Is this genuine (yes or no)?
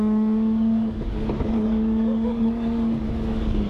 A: no